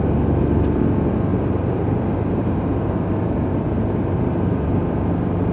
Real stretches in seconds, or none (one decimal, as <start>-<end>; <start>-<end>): 0.0-1.3; 4.6-5.5